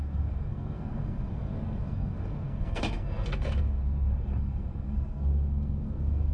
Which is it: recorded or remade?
remade